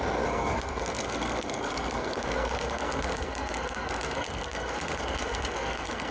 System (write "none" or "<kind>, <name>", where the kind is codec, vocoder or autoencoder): codec, SNAC